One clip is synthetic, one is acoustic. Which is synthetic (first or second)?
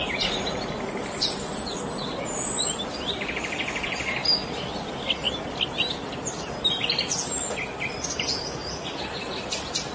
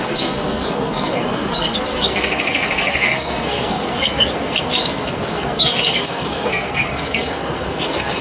second